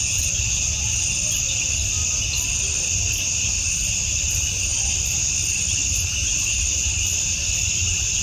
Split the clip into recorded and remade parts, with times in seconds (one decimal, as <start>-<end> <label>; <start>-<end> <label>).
0.0-8.2 recorded